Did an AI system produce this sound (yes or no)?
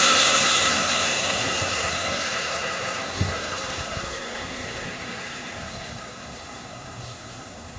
yes